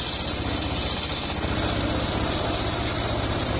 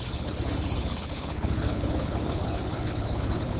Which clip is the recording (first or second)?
first